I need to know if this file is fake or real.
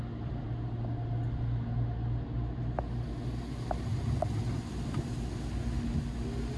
real